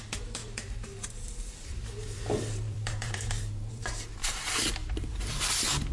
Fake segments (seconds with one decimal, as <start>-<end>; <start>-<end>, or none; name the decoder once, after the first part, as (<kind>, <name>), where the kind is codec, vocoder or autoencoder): 0.4-3.9 (vocoder, BigVGAN v2); 4.8-5.4